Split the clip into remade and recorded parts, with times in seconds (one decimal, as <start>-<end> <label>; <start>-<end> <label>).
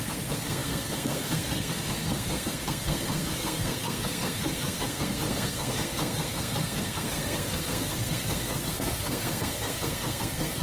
0.0-10.6 remade